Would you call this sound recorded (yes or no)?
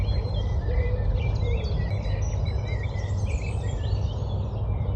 yes